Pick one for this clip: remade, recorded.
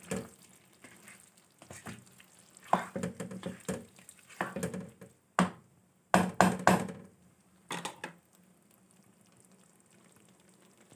recorded